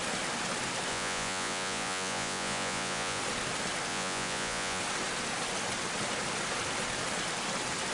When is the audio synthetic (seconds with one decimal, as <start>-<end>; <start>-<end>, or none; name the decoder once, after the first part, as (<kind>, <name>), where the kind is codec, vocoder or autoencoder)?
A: 0.9-3.2 (vocoder, Vocos); 3.9-4.8

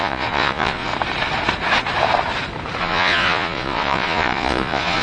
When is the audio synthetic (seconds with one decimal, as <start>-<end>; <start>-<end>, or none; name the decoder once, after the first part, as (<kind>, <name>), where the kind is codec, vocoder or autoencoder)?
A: 0.0-0.9 (vocoder, Vocos); 2.8-5.0

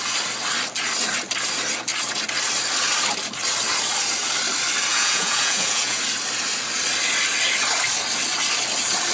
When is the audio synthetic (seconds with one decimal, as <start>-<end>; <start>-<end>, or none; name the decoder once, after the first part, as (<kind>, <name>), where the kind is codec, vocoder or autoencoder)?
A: 4.9-6.0 (vocoder, Vocos)

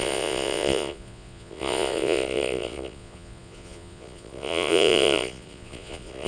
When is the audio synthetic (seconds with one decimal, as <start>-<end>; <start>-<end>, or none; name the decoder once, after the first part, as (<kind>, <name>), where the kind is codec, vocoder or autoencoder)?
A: 0.0-6.3 (vocoder, Vocos)

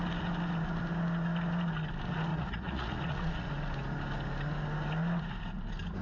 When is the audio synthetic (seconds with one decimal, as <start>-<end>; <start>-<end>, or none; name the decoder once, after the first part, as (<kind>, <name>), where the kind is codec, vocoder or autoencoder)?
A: 2.3-3.5 (vocoder, Vocos)

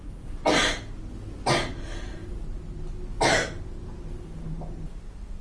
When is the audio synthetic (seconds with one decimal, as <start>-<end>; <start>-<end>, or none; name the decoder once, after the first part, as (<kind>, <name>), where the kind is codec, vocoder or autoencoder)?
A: none